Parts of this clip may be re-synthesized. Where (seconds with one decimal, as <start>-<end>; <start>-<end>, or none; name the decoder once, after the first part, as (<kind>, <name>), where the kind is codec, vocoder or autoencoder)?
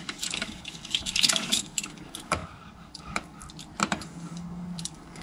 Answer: 0.0-3.4 (codec, DAC); 3.9-5.2